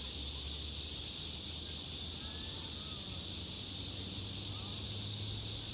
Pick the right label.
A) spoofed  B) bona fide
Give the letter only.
B